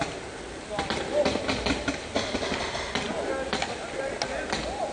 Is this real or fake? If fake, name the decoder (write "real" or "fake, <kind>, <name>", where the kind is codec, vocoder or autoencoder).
real